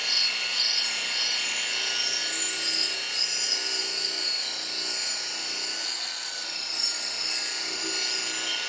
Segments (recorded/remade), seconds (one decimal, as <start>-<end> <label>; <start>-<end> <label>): 0.0-8.7 recorded